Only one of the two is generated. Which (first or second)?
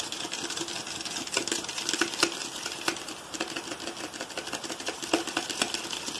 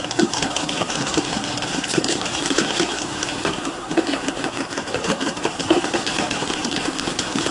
second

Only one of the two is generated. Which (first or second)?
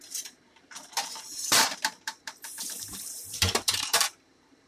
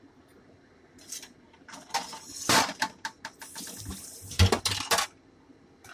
first